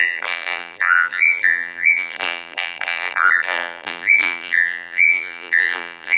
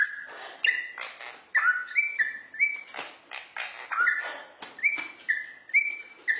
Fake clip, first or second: first